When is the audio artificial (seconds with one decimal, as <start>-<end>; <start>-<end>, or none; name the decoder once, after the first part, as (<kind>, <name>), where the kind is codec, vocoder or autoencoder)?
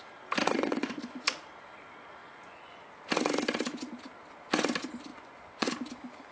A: 0.4-1.0 (vocoder, Vocos); 2.2-2.9; 5.1-5.7